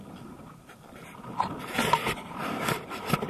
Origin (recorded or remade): recorded